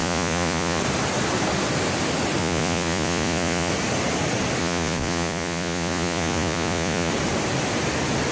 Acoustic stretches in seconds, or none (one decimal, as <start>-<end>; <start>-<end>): 0.8-2.4; 3.7-4.6; 7.1-8.3